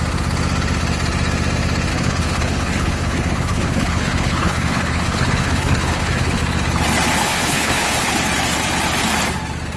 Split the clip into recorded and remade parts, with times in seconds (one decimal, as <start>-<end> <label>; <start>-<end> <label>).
0.0-1.9 recorded; 1.9-6.4 remade; 6.4-7.2 recorded; 7.2-8.1 remade; 8.1-9.8 recorded